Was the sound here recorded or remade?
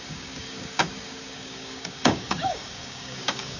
remade